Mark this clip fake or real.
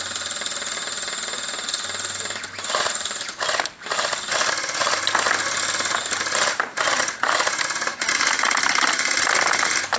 real